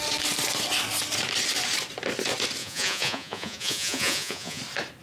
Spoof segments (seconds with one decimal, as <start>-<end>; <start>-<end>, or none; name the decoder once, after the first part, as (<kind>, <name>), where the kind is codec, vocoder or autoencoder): 2.6-4.6 (vocoder, Vocos)